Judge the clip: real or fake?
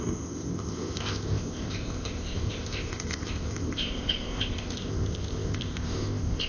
fake